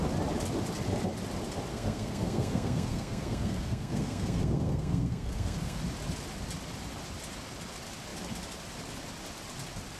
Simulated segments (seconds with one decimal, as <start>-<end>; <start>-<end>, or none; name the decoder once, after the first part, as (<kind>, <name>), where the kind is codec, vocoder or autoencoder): 1.7-5.8 (codec, SNAC)